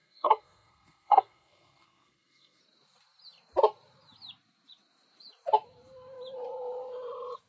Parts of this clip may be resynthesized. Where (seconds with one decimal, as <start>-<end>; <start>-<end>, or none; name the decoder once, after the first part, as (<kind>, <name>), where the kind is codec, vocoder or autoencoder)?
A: 0.0-2.6 (codec, SNAC)